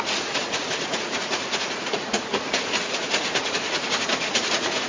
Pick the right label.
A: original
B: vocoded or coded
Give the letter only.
B